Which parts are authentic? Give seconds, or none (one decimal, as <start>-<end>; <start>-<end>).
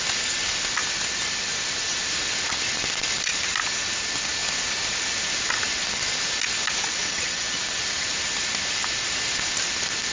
0.0-6.8; 7.6-10.1